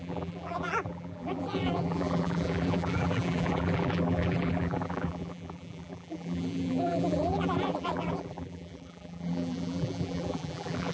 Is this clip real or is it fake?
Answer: fake